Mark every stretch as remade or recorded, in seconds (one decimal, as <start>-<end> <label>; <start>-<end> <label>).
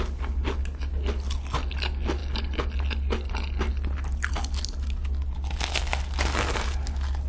0.0-7.3 recorded